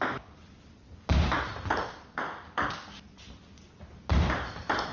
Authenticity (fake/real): real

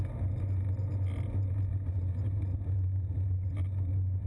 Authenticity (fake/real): real